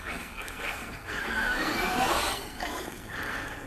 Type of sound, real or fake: fake